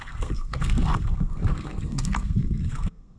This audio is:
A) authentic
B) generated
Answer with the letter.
B